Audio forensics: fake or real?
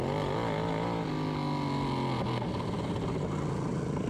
real